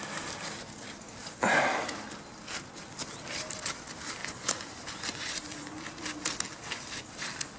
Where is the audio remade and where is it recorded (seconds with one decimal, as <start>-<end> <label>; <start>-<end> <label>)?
0.0-4.2 recorded; 4.2-5.8 remade; 5.8-7.6 recorded